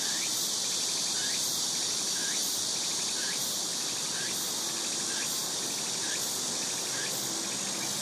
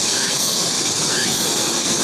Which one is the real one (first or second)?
first